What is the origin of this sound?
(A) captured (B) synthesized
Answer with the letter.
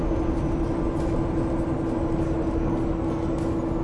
A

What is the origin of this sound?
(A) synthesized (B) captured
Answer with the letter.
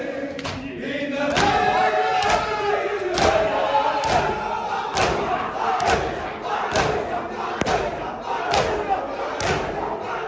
B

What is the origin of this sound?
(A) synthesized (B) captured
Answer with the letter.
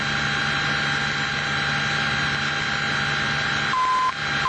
B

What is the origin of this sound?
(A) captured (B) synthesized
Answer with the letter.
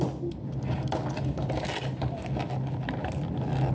A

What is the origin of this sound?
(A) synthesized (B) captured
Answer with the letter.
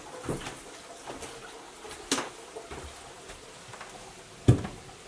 B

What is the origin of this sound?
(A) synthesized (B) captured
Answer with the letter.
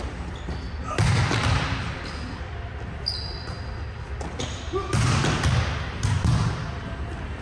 B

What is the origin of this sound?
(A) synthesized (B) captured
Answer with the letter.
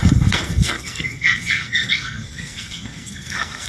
A